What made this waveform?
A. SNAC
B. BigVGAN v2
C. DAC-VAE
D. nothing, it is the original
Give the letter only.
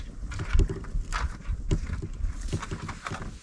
D